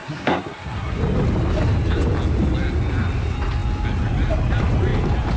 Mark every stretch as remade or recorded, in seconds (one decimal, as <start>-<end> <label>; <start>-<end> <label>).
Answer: 0.0-1.0 remade; 1.0-5.4 recorded